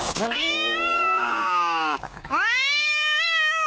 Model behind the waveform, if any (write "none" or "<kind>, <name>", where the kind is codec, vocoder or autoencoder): codec, DAC